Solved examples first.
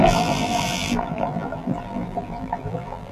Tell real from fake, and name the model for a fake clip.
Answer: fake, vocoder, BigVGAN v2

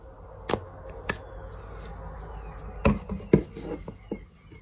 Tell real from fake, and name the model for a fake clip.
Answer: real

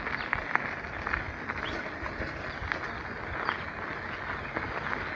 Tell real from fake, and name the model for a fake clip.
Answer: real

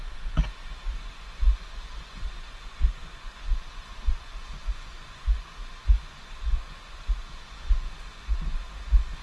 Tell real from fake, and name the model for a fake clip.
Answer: fake, vocoder, Vocos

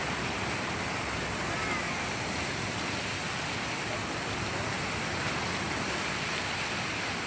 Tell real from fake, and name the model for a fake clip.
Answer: real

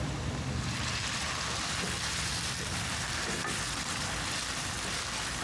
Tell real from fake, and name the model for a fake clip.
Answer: real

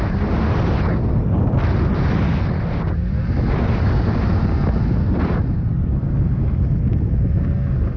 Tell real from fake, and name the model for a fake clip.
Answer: real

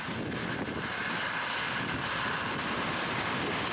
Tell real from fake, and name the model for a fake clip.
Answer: real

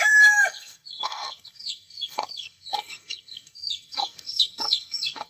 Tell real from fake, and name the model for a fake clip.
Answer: fake, codec, SNAC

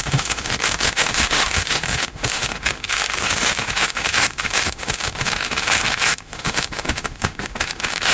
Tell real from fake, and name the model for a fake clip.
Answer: fake, autoencoder, DAC-VAE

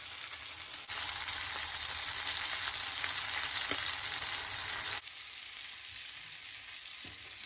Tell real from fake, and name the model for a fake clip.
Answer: real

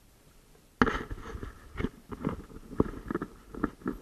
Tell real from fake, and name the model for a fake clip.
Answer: real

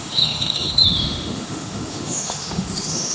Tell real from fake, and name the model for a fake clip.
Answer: fake, autoencoder, DAC-VAE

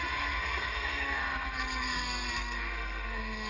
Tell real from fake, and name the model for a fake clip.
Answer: fake, codec, SNAC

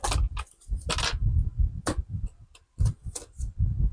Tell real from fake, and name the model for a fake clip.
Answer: real